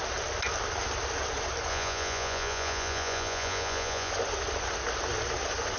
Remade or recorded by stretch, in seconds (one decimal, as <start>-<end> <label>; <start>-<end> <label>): 0.0-1.7 recorded; 1.7-4.1 remade; 4.1-5.8 recorded